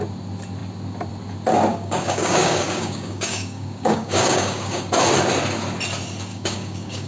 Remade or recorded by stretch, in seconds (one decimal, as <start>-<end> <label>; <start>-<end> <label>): 0.0-1.7 recorded; 1.7-4.9 remade; 4.9-6.3 recorded; 6.3-7.1 remade